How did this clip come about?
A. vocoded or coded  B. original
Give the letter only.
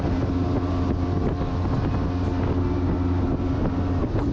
B